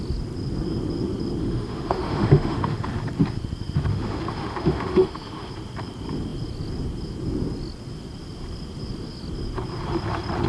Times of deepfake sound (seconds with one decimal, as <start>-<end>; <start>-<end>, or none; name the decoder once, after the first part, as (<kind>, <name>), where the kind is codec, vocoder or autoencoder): 1.4-2.9 (autoencoder, DAC-VAE); 3.9-5.5